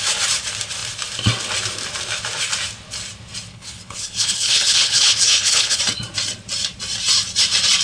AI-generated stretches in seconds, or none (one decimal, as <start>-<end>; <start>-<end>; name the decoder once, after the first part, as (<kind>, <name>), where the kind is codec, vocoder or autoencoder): 3.5-5.8 (codec, HILCodec)